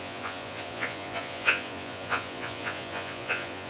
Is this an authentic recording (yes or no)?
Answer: no